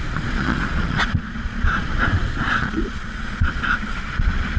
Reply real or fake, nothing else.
fake